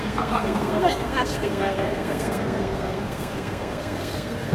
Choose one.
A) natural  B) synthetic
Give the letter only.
B